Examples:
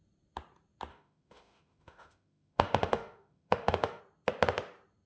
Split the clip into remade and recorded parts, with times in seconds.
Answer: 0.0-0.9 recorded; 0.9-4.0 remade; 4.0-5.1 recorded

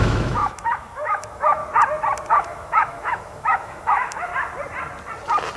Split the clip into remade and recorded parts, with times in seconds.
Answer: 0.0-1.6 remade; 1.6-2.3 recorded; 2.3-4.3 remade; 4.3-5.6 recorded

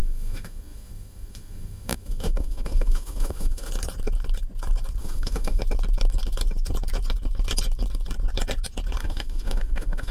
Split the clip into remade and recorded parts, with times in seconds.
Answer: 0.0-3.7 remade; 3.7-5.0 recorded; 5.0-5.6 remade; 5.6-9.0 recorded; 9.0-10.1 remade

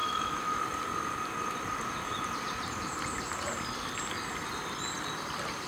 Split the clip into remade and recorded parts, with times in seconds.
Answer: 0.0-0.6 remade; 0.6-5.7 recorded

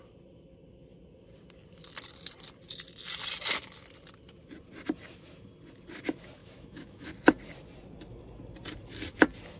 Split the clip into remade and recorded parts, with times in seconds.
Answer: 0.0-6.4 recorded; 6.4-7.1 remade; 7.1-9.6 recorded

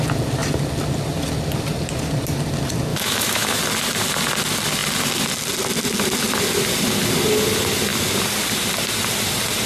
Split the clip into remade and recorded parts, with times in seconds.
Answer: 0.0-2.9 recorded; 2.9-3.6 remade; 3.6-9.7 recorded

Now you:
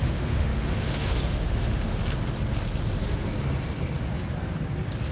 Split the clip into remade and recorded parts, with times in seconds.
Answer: 0.0-2.0 remade; 2.0-5.1 recorded